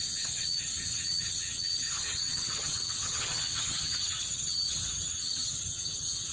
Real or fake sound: fake